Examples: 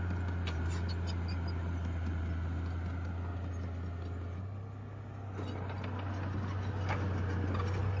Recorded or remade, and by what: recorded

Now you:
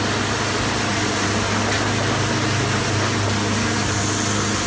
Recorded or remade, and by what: recorded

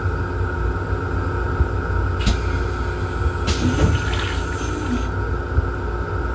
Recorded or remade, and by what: recorded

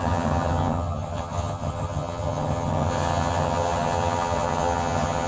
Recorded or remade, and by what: remade, vocoder, HiFi-GAN